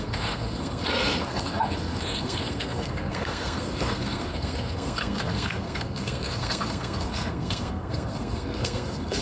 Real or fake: fake